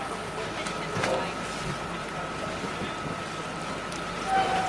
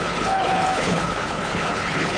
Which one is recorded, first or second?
first